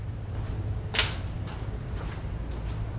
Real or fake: real